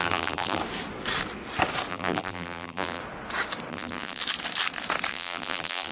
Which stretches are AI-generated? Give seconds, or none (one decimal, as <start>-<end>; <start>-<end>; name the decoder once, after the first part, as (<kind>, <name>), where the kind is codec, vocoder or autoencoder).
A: 0.0-0.6 (vocoder, BigVGAN v2); 1.9-3.0; 3.7-4.2; 5.1-5.9